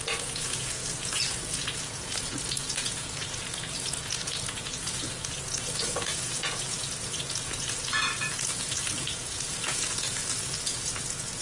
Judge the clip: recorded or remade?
remade